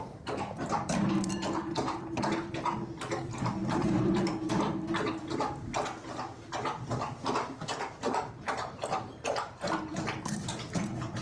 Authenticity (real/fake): fake